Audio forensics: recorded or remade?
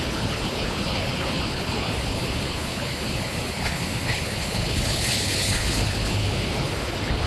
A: remade